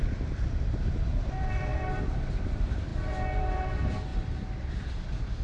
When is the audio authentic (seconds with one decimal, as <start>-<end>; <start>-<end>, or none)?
2.9-3.4; 4.1-4.7